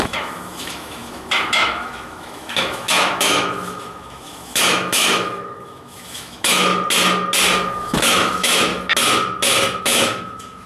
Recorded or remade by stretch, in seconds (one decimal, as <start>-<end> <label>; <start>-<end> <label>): 0.0-6.7 remade; 6.7-7.7 recorded; 7.7-8.7 remade; 8.7-9.8 recorded; 9.8-10.7 remade